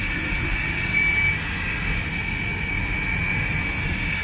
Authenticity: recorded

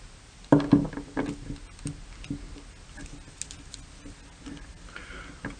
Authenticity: recorded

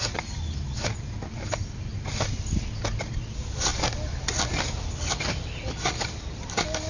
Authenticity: recorded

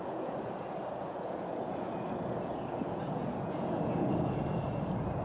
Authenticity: remade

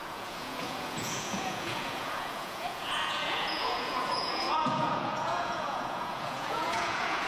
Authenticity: remade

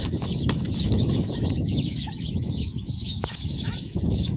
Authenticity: remade